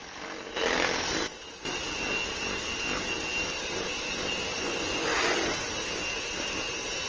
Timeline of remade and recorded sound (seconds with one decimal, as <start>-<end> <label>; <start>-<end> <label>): 0.0-4.5 recorded; 4.5-5.7 remade; 5.7-7.1 recorded